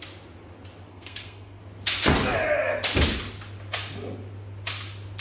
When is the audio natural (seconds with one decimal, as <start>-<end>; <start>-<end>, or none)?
0.0-0.9; 1.6-5.2